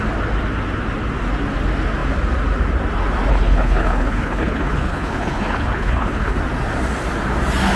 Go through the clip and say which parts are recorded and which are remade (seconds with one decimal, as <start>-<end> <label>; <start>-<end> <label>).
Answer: 0.0-3.3 recorded; 3.3-6.4 remade; 6.4-7.8 recorded